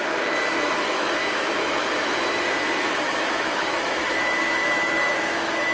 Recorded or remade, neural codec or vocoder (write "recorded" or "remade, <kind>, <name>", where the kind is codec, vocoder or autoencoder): remade, autoencoder, DAC-VAE